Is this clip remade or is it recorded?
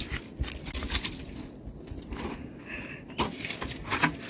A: recorded